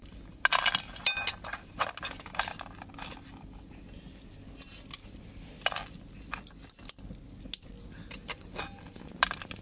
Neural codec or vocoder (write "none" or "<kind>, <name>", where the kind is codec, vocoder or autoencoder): none